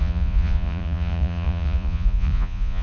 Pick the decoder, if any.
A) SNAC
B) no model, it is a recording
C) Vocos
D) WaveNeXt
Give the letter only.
C